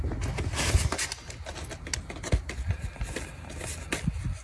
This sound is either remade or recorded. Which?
recorded